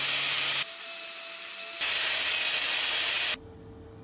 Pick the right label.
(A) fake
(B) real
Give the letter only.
B